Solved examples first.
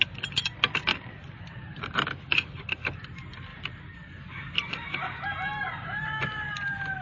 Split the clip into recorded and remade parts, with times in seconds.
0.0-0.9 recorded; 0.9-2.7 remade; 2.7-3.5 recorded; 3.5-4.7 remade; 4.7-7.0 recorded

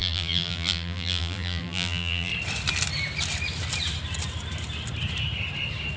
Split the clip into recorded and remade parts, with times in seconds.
0.0-2.3 remade; 2.3-6.0 recorded

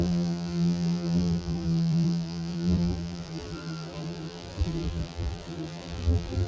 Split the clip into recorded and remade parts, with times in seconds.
0.0-6.5 remade